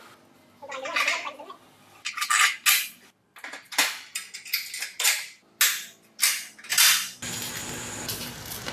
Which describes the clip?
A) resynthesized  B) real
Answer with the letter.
B